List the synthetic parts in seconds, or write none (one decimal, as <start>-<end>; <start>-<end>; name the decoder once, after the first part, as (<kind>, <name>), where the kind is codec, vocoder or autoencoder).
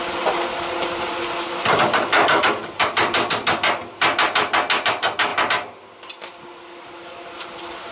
none